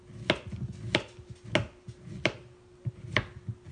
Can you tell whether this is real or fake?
real